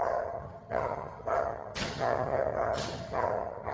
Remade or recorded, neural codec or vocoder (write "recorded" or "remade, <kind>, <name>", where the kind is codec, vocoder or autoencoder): remade, vocoder, HiFi-GAN